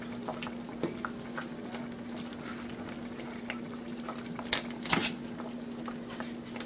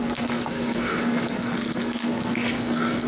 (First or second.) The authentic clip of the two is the first